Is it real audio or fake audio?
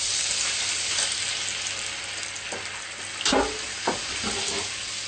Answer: real